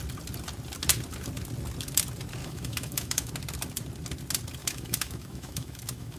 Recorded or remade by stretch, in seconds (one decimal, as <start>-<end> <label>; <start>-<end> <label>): 0.0-2.4 recorded; 2.4-3.3 remade; 3.3-4.6 recorded; 4.6-6.2 remade